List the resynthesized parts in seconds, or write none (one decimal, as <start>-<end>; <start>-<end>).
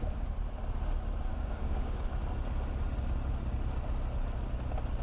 1.3-2.1